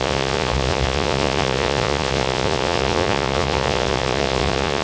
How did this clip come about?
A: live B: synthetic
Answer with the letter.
B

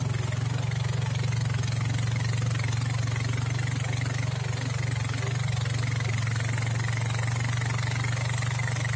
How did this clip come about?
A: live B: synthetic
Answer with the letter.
A